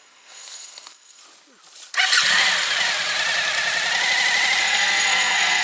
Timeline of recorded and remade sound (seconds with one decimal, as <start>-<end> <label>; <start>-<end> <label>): 0.0-1.2 remade; 1.2-4.6 recorded; 4.6-5.6 remade